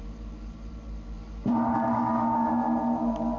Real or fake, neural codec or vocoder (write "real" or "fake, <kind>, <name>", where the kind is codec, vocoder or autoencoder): fake, vocoder, BigVGAN v2